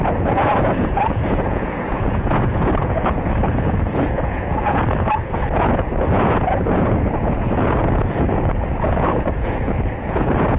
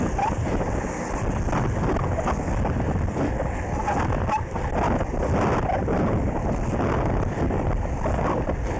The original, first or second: second